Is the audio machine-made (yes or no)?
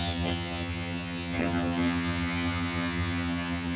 yes